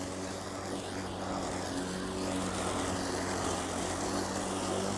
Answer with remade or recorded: recorded